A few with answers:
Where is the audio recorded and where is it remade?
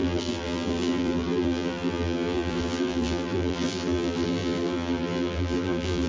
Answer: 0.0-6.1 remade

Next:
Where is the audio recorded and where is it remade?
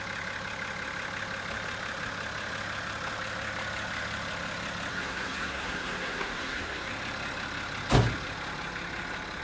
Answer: 0.0-4.9 recorded; 4.9-6.9 remade; 6.9-9.4 recorded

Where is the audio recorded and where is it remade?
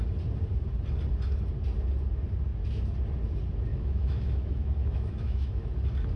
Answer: 0.0-3.7 recorded; 3.7-5.7 remade; 5.7-6.2 recorded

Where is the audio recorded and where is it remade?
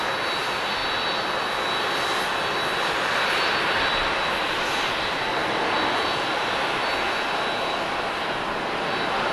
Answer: 0.0-9.3 recorded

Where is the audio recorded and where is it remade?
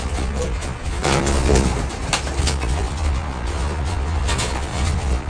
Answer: 0.0-1.7 remade; 1.7-2.4 recorded; 2.4-5.3 remade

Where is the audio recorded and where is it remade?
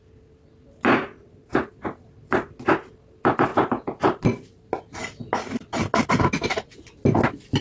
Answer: 0.0-1.2 recorded; 1.2-1.7 remade; 1.7-3.5 recorded; 3.5-4.8 remade; 4.8-7.6 recorded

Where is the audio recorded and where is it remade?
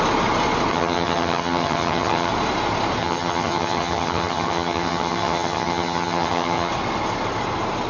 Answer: 0.0-0.7 recorded; 0.7-2.3 remade; 2.3-3.0 recorded; 3.0-6.7 remade; 6.7-7.9 recorded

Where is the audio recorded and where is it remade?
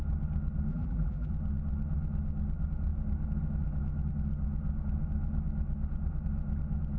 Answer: 0.0-0.7 recorded; 0.7-1.3 remade; 1.3-7.0 recorded